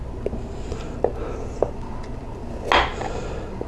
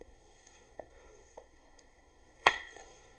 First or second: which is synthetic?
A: second